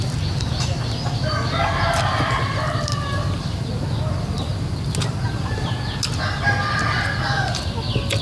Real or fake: real